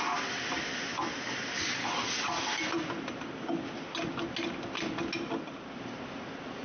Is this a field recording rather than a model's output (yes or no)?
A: yes